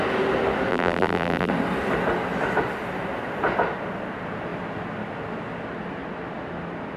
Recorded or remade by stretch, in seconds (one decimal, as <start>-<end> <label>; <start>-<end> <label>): 0.0-0.7 recorded; 0.7-1.5 remade; 1.5-7.0 recorded